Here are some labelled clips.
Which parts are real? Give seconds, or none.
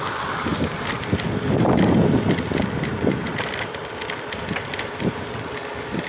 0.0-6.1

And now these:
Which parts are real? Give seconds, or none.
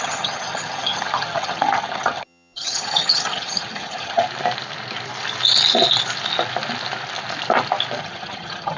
4.2-8.0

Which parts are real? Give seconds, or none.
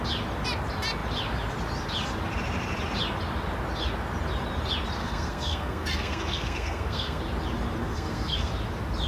0.0-5.0; 7.2-7.8; 8.5-9.1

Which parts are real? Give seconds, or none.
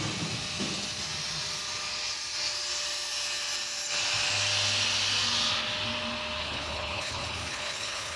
0.0-6.4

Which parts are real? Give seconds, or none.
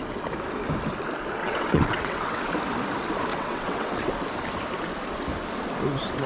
0.0-1.4; 2.5-3.3; 4.1-6.3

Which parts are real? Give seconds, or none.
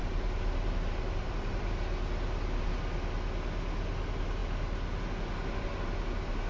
1.7-6.5